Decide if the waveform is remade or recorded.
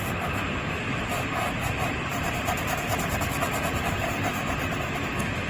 recorded